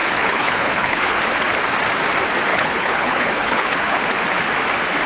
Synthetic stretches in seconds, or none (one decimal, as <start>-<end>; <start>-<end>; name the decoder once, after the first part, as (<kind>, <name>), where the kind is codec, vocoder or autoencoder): 0.0-1.2 (codec, HILCodec); 2.5-4.2